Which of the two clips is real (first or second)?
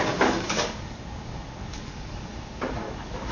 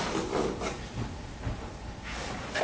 second